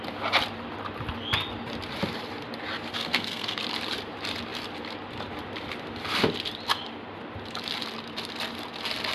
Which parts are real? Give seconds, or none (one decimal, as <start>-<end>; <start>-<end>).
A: 0.0-2.9; 3.6-9.1